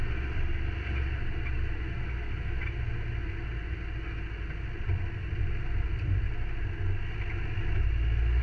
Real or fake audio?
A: real